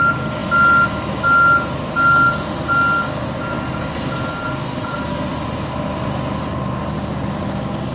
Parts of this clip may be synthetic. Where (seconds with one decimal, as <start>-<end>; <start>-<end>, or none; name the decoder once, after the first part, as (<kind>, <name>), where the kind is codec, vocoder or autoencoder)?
none